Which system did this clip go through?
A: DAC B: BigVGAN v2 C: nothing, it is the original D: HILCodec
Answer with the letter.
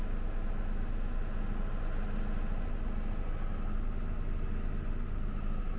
C